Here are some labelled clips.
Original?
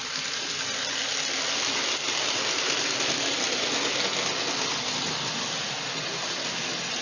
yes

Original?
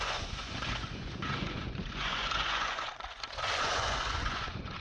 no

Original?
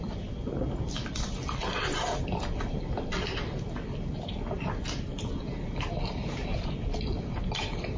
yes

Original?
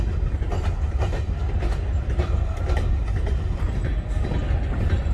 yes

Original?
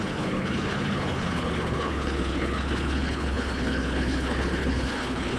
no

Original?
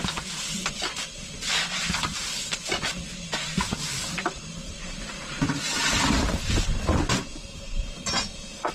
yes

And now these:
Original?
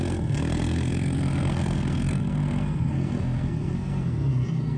no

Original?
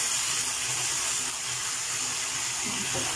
yes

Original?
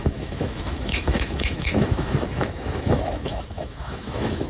no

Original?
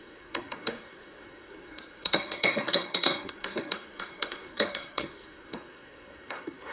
no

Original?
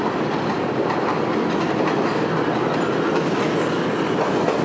yes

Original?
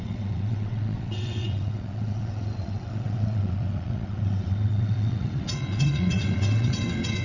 no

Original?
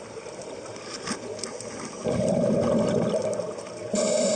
yes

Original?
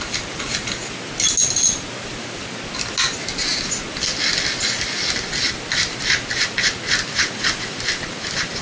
yes